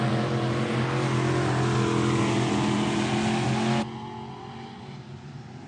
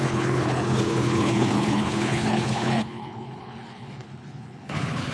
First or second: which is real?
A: first